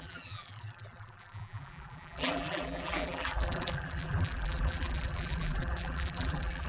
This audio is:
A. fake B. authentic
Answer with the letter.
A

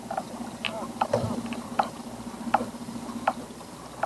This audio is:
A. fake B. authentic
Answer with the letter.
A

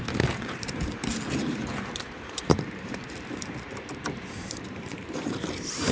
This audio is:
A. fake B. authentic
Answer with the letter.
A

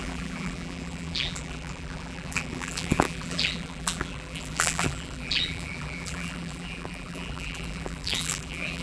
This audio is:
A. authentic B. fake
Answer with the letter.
B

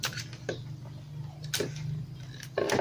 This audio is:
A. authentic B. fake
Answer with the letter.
A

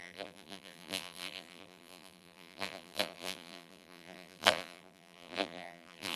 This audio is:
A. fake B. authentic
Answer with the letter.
A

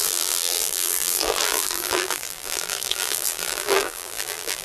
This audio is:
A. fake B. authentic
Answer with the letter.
A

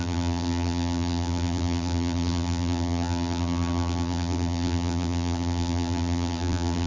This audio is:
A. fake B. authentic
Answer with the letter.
A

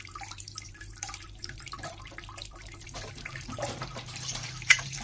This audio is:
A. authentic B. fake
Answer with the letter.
B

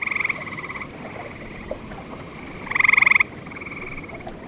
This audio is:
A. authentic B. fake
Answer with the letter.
A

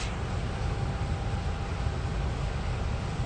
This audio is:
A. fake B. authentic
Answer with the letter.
B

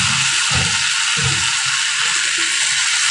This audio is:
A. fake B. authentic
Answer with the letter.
B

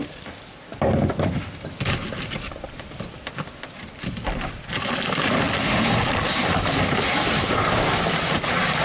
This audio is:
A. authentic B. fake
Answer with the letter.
B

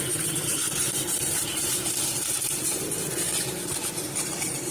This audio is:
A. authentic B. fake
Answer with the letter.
B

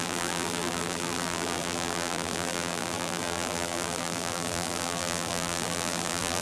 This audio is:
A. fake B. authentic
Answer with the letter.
A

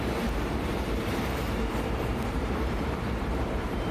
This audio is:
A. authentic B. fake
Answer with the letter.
B